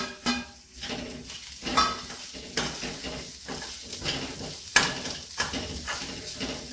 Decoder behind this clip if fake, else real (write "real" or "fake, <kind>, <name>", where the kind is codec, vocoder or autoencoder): real